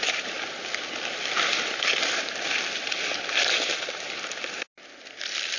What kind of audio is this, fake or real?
real